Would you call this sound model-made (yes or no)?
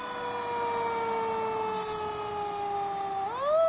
no